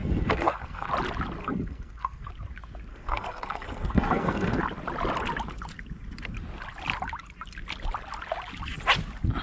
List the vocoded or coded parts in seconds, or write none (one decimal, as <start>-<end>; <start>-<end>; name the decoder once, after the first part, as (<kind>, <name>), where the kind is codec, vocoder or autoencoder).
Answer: 0.0-0.9 (codec, SNAC); 1.4-2.3; 2.9-4.6